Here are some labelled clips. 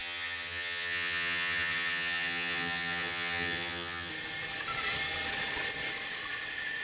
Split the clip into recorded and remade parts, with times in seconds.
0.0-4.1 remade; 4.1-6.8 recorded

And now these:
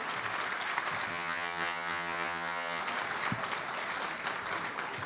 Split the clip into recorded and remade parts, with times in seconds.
0.0-1.1 recorded; 1.1-2.8 remade; 2.8-5.1 recorded

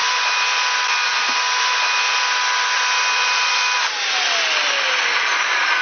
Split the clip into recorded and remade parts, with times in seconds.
0.0-5.8 recorded